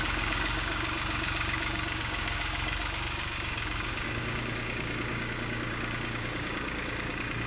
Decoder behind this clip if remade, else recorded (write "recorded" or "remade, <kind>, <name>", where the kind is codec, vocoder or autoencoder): remade, codec, DAC